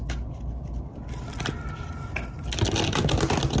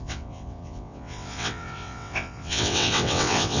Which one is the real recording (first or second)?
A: first